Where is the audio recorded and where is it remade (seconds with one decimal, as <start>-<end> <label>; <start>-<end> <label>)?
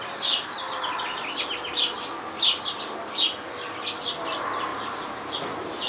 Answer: 0.0-4.7 recorded; 4.7-5.3 remade; 5.3-5.9 recorded